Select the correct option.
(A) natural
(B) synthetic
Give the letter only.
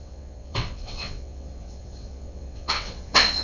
B